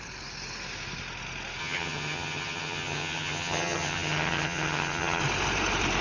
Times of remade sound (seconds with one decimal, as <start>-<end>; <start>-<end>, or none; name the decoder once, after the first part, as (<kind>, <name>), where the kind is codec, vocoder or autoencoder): 1.6-5.2 (vocoder, HiFi-GAN)